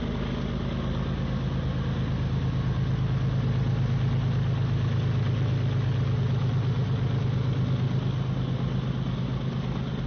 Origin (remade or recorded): recorded